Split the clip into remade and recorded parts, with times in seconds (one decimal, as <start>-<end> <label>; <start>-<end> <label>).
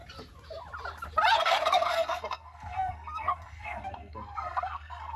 0.0-1.3 recorded; 1.3-5.2 remade